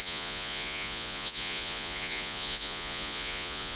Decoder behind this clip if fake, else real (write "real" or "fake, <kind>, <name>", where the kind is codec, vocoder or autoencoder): fake, vocoder, Vocos